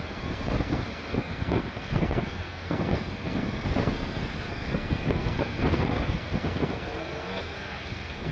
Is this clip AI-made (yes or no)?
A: yes